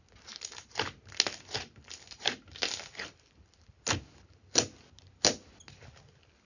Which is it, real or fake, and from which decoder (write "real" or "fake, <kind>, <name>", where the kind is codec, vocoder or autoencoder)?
real